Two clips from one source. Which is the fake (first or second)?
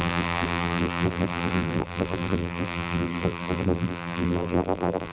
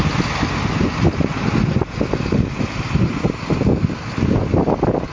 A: first